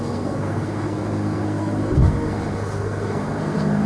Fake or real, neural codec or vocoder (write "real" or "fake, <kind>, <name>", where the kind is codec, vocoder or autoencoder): fake, codec, SNAC